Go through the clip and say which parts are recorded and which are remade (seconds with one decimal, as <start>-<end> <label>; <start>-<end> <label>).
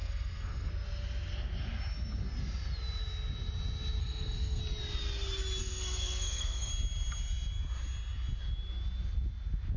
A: 0.0-0.7 remade; 0.7-4.0 recorded; 4.0-4.6 remade; 4.6-5.6 recorded; 5.6-6.7 remade; 6.7-9.8 recorded